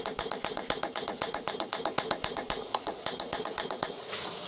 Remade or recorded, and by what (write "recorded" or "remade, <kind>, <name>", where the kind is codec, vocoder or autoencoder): remade, vocoder, Vocos